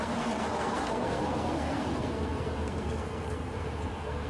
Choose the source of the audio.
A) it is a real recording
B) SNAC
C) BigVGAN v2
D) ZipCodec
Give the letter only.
B